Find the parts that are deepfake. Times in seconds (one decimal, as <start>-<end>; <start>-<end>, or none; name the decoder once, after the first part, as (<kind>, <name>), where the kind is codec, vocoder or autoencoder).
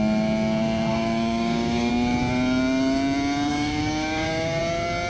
0.9-1.9 (codec, DAC); 3.5-4.6